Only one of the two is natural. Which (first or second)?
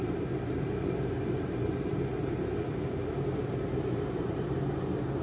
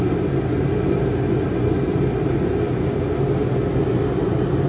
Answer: second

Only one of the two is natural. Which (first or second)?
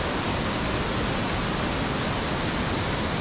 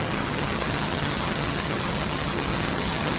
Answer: first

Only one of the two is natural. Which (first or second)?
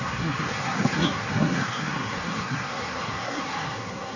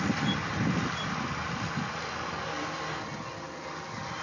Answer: second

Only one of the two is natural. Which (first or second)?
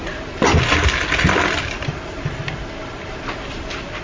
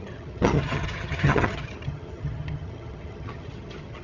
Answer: first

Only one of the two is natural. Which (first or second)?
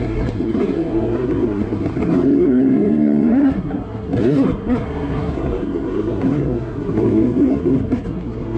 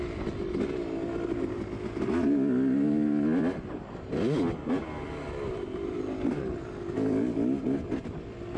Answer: second